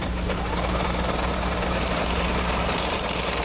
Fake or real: fake